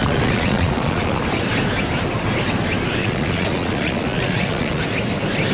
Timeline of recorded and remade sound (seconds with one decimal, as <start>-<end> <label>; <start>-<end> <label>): 0.0-1.2 remade; 1.2-3.0 recorded; 3.0-4.8 remade; 4.8-5.5 recorded